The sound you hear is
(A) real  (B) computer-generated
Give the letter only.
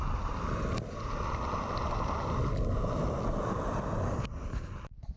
A